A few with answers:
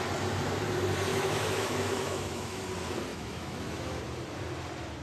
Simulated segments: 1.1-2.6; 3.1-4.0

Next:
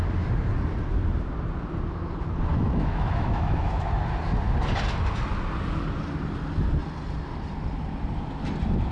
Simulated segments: 2.5-3.9